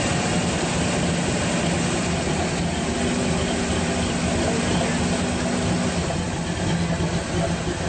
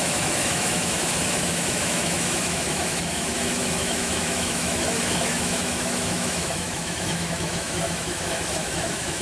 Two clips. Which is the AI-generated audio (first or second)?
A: second